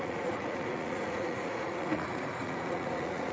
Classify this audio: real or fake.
fake